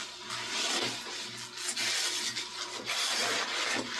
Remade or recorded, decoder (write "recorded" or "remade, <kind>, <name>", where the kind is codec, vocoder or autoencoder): recorded